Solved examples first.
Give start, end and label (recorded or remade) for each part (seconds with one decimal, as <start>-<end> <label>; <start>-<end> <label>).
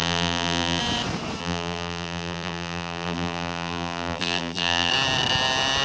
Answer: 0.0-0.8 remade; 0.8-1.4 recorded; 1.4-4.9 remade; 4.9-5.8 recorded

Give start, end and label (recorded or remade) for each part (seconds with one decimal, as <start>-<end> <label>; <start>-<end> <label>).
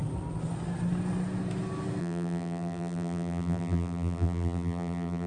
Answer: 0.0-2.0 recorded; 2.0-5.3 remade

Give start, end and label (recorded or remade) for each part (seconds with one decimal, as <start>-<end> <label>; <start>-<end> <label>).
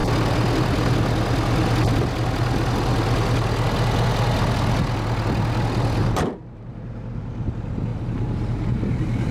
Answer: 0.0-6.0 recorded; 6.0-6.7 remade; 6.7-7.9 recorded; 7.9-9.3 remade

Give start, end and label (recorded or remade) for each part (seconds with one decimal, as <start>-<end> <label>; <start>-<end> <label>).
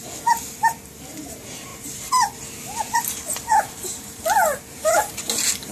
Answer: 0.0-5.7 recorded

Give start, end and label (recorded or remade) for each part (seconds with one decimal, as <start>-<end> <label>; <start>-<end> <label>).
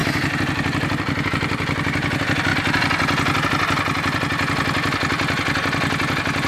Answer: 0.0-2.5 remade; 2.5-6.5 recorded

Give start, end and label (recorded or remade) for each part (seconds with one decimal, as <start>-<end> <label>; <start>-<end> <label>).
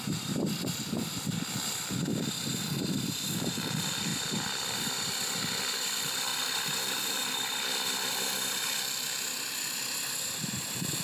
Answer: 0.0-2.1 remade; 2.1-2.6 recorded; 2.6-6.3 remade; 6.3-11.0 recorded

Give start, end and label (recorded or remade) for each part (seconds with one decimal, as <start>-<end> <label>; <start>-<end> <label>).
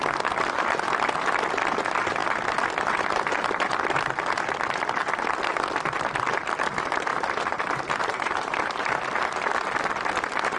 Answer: 0.0-7.1 recorded; 7.1-7.6 remade; 7.6-8.0 recorded; 8.0-9.0 remade; 9.0-10.6 recorded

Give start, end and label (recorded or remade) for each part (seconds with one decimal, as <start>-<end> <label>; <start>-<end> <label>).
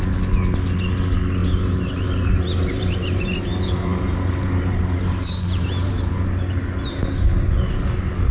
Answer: 0.0-1.4 recorded; 1.4-5.9 remade; 5.9-8.3 recorded